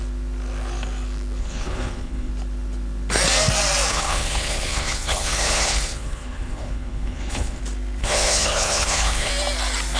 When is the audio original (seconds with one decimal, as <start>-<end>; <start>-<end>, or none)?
0.0-1.4; 2.3-3.9; 7.6-8.0; 9.3-10.0